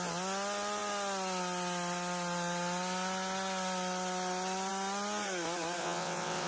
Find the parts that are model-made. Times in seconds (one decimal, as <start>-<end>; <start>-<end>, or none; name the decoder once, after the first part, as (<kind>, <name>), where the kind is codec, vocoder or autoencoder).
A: 5.8-6.5 (vocoder, WaveNeXt)